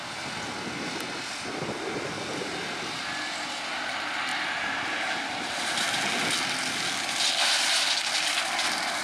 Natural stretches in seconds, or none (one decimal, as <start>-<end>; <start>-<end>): 0.0-9.0